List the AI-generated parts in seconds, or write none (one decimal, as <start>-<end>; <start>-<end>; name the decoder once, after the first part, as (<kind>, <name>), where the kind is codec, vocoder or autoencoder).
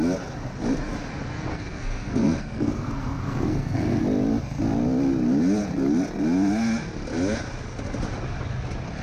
1.5-4.0 (codec, SNAC)